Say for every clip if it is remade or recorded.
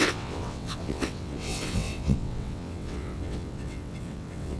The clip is remade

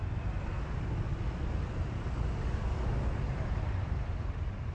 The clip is recorded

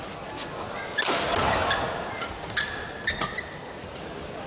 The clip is recorded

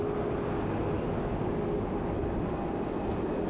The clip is recorded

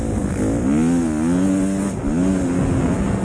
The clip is recorded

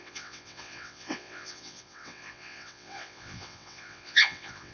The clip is remade